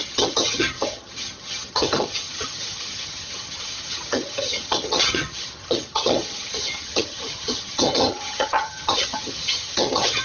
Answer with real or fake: fake